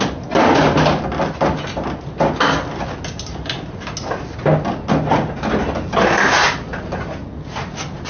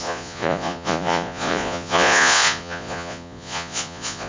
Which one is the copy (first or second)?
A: second